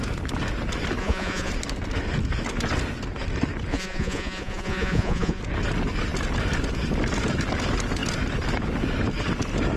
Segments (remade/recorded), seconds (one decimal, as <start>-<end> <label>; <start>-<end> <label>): 0.0-1.0 recorded; 1.0-1.5 remade; 1.5-3.7 recorded; 3.7-5.4 remade; 5.4-9.8 recorded